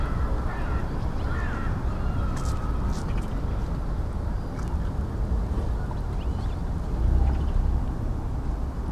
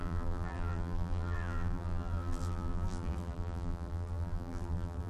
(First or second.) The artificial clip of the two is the second